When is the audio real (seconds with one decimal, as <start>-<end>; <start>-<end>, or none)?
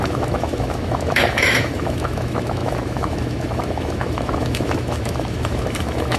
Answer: none